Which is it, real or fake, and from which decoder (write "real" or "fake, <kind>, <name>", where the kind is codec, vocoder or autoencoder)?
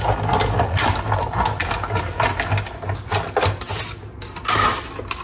real